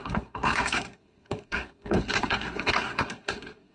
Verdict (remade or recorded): remade